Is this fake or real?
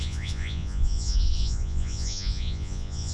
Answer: fake